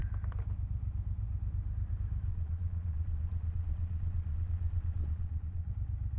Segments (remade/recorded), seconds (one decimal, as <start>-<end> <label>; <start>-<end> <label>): 0.0-2.3 recorded; 2.3-5.7 remade; 5.7-6.2 recorded